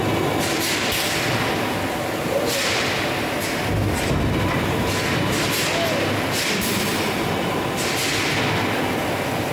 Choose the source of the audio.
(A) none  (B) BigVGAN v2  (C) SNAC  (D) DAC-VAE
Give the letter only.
A